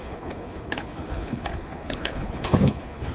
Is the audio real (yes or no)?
no